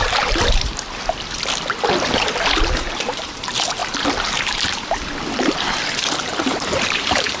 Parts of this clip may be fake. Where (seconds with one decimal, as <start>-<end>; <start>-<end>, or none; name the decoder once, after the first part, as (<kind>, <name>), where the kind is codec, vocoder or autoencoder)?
0.0-0.7 (vocoder, BigVGAN v2); 2.6-3.8; 6.4-7.4